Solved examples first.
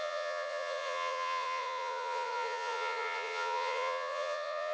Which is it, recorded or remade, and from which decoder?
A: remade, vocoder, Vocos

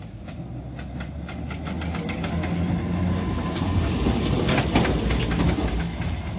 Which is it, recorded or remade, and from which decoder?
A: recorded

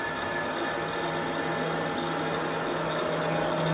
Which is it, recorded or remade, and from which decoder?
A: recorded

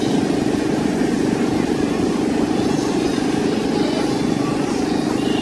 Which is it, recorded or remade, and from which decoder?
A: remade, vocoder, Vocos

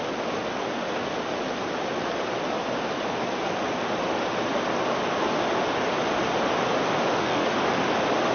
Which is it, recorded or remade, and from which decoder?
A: recorded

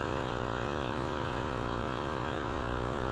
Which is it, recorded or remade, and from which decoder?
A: remade, vocoder, Vocos